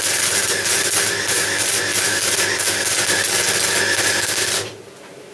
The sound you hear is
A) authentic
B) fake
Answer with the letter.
A